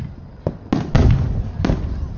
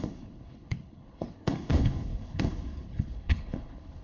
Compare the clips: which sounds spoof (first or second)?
second